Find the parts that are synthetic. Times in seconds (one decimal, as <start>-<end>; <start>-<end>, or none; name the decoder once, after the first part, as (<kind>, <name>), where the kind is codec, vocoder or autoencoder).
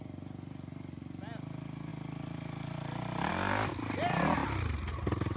none